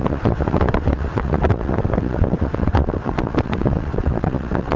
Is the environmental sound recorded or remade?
remade